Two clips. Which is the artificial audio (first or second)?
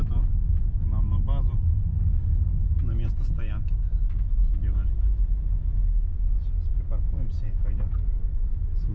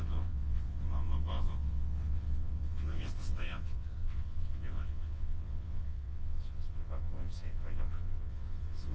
second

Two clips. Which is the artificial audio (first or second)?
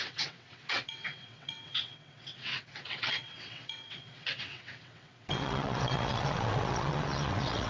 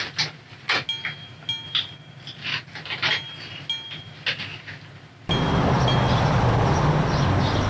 first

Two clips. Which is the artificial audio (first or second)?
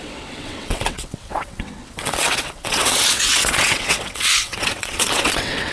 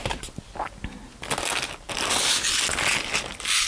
first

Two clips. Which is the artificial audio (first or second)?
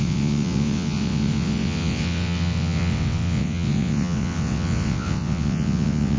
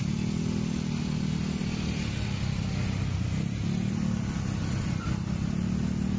first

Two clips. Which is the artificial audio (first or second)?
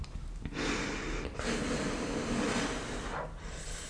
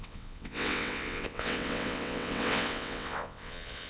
second